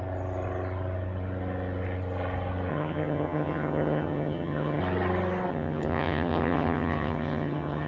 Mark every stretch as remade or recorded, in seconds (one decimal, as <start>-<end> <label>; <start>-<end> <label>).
0.0-2.7 recorded; 2.7-4.8 remade; 4.8-5.5 recorded; 5.5-7.9 remade